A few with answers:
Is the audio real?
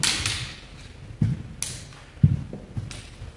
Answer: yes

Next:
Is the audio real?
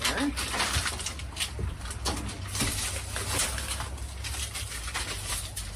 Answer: yes